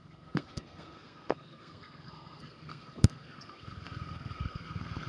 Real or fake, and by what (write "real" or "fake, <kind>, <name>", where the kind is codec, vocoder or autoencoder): fake, codec, SNAC